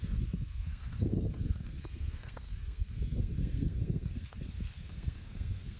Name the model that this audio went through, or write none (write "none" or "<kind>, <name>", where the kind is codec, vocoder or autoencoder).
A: codec, SNAC